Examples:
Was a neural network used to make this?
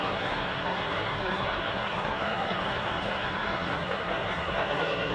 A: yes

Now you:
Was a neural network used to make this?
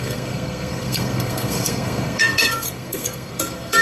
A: yes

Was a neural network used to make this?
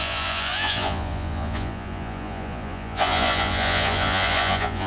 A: yes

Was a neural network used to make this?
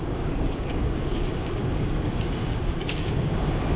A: yes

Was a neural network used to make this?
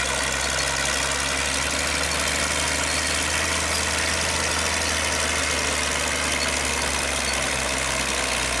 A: no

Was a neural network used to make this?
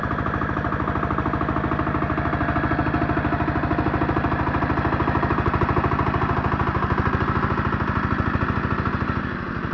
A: no